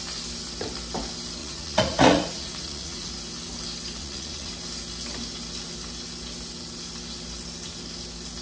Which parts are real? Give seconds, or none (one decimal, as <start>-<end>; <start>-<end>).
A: 0.0-1.4; 3.1-4.0; 4.5-8.4